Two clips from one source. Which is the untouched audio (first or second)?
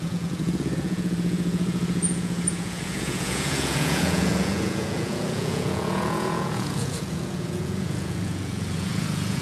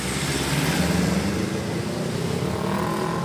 second